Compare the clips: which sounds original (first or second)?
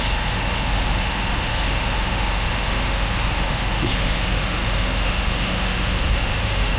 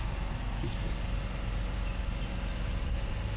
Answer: second